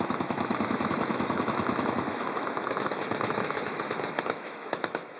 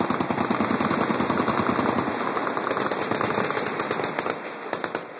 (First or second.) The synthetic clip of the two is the first